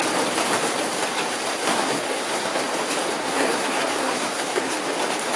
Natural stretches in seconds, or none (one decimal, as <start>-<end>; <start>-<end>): 0.0-1.6; 2.6-3.2; 4.7-5.4

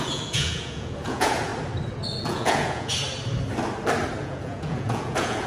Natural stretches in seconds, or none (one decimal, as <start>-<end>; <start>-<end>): 1.5-2.2; 2.9-4.2

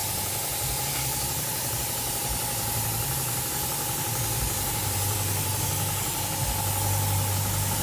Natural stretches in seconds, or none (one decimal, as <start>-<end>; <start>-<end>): 1.8-2.2; 5.7-7.8